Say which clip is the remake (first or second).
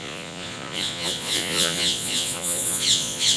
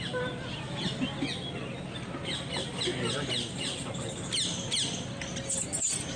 first